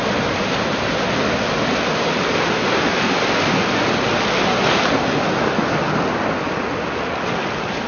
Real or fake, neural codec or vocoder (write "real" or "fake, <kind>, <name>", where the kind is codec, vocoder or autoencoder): real